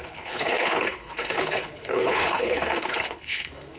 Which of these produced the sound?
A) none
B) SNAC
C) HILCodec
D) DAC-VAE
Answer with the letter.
C